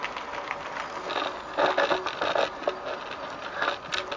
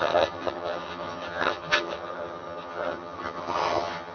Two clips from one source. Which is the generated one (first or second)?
second